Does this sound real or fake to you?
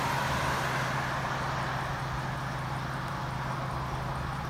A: real